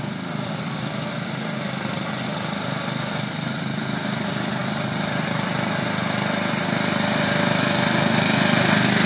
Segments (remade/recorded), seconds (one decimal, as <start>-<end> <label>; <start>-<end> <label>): 0.0-9.1 remade